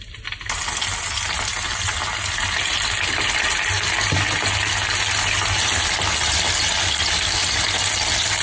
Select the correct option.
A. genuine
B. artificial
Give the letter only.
A